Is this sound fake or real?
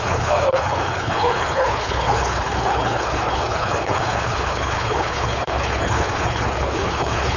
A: fake